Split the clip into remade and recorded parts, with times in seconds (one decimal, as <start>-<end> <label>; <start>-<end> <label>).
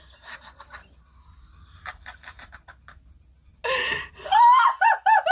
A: 0.0-5.3 recorded